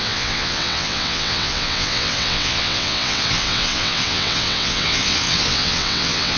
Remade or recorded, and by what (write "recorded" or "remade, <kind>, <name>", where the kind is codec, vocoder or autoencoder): remade, vocoder, WaveNeXt